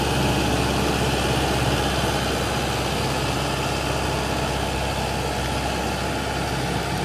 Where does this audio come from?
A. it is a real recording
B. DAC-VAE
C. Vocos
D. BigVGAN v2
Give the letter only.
A